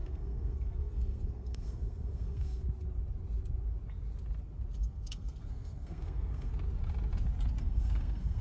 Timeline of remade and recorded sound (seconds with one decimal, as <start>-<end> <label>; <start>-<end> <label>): 0.0-2.6 remade; 2.6-4.8 recorded; 4.8-6.5 remade; 6.5-7.6 recorded; 7.6-8.4 remade